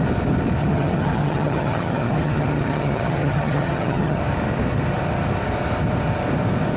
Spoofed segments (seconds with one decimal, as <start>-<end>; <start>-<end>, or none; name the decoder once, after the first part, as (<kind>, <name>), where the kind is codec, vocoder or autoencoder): 0.6-4.2 (vocoder, HiFi-GAN)